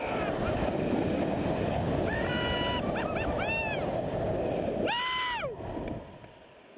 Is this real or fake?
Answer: real